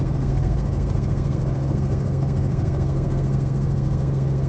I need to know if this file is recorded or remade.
remade